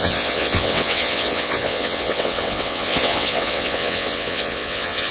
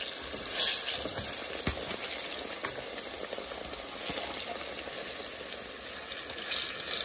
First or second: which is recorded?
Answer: second